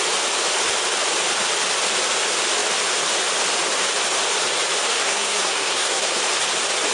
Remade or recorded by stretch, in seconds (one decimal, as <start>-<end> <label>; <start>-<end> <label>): 0.0-4.9 recorded; 4.9-6.2 remade; 6.2-6.9 recorded